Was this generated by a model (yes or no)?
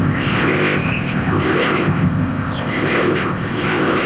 yes